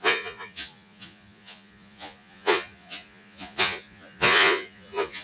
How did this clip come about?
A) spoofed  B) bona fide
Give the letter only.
A